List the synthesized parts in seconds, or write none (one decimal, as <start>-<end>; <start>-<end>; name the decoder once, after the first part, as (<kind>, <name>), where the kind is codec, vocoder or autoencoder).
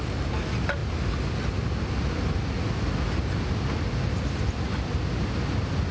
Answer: none